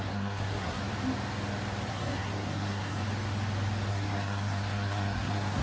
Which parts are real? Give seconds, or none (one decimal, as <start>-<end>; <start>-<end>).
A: 0.8-1.9; 3.0-3.9